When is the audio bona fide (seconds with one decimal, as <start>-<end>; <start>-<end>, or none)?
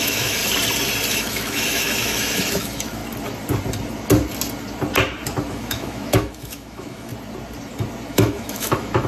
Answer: 0.4-1.1; 3.0-5.5; 7.1-8.1